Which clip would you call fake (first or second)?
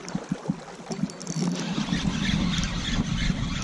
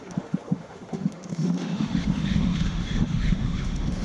second